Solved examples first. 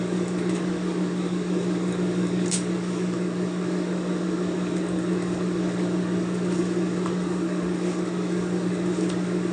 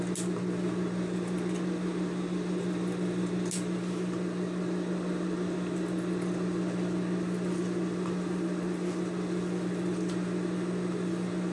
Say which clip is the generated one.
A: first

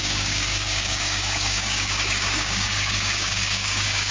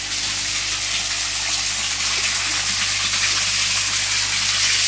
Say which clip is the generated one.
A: first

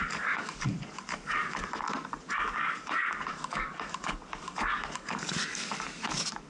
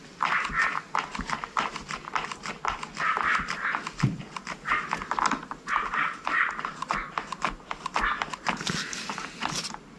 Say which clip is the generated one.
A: first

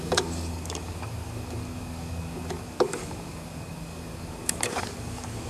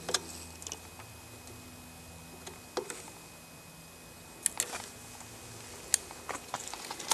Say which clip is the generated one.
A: first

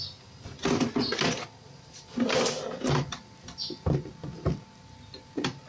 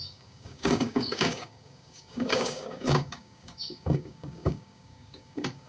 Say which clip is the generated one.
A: second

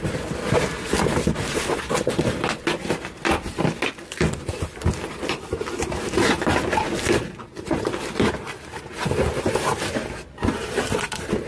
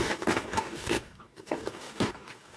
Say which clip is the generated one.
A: second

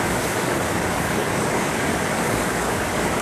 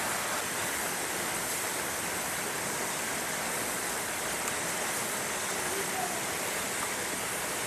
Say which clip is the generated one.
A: first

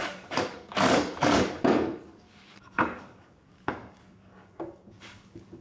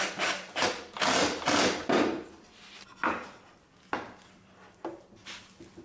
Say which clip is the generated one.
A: first